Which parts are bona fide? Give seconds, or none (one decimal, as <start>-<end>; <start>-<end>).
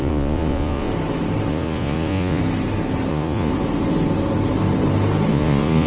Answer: 0.9-1.5; 2.4-3.1; 3.5-5.3